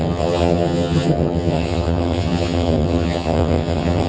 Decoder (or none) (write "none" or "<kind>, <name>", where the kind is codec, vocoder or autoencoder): vocoder, HiFi-GAN